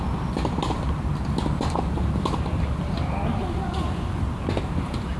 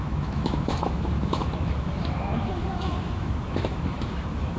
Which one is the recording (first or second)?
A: first